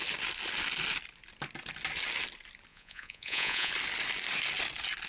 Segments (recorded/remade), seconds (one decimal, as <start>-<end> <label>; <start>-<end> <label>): 0.0-2.7 recorded; 2.7-3.7 remade; 3.7-5.1 recorded